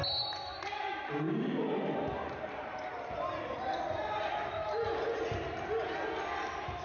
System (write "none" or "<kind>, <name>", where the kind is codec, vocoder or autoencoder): none